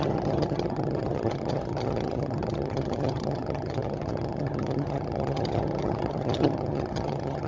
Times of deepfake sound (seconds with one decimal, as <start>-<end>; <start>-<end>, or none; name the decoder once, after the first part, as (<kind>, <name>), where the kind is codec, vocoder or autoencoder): 0.0-7.5 (vocoder, HiFi-GAN)